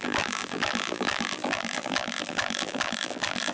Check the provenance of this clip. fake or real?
fake